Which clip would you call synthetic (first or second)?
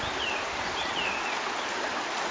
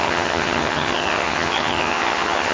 second